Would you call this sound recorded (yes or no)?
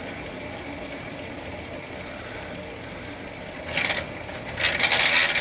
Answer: yes